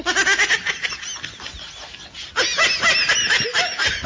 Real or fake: real